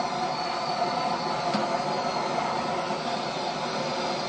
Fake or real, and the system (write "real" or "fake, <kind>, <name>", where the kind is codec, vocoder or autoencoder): real